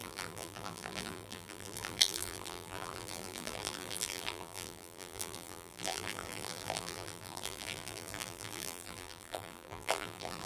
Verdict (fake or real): fake